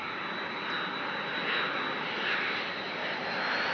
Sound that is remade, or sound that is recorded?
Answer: recorded